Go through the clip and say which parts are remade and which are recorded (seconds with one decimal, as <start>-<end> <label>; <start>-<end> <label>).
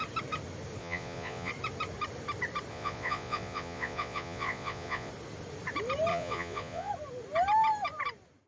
0.0-0.8 recorded; 0.8-1.5 remade; 1.5-2.7 recorded; 2.7-5.1 remade; 5.1-6.1 recorded; 6.1-6.9 remade; 6.9-8.5 recorded